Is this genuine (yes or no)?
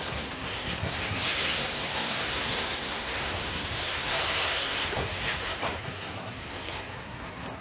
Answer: no